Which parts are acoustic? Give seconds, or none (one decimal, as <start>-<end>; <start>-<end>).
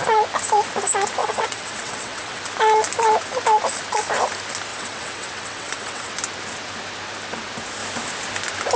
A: 0.0-1.2; 2.4-4.7; 6.1-8.8